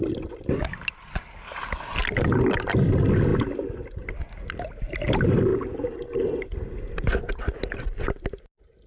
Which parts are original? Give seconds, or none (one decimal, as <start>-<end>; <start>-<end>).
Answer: 0.0-8.9